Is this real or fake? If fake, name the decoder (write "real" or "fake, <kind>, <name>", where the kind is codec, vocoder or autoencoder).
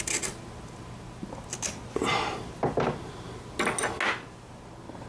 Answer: real